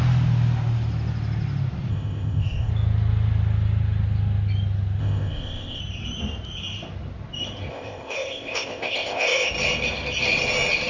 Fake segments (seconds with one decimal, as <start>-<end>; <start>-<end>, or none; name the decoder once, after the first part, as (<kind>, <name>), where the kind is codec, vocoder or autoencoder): 1.9-2.7 (codec, ZipCodec); 5.0-5.8; 7.7-9.5